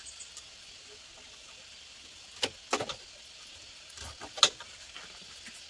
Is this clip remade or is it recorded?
recorded